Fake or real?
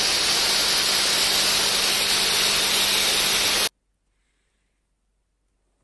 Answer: real